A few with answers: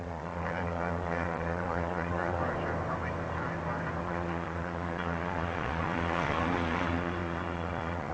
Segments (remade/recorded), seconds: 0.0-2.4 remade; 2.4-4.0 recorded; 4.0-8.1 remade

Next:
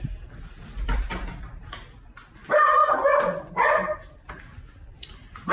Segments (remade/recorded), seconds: 0.0-2.8 recorded; 2.8-3.5 remade; 3.5-5.5 recorded

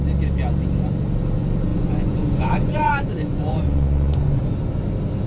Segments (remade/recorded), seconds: 0.0-1.7 recorded; 1.7-4.4 remade; 4.4-5.3 recorded

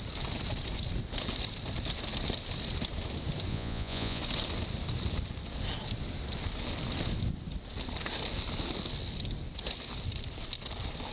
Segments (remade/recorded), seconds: 0.0-3.5 recorded; 3.5-4.2 remade; 4.2-11.1 recorded

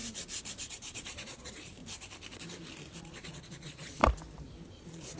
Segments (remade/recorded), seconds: 0.0-0.6 recorded; 0.6-1.8 remade; 1.8-3.0 recorded; 3.0-4.0 remade; 4.0-4.7 recorded; 4.7-5.2 remade

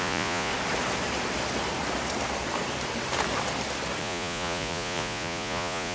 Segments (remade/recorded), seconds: 0.0-0.5 remade; 0.5-4.0 recorded; 4.0-5.9 remade

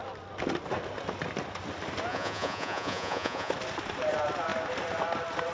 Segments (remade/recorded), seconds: 0.0-2.1 recorded; 2.1-3.5 remade; 3.5-5.5 recorded

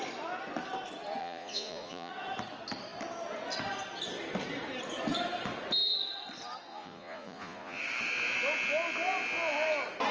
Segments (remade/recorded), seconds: 0.0-1.2 recorded; 1.2-2.1 remade; 2.1-6.7 recorded; 6.7-7.8 remade; 7.8-10.1 recorded